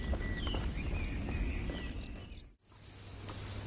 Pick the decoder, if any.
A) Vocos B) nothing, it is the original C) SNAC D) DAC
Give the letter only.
B